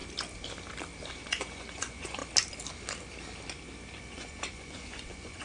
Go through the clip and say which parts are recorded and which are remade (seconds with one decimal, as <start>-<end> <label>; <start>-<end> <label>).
0.0-1.1 recorded; 1.1-2.2 remade; 2.2-4.0 recorded; 4.0-5.4 remade